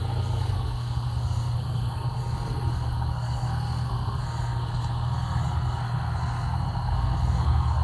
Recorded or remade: remade